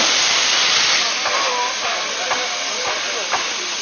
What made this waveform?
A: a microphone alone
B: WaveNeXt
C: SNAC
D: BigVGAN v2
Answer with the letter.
A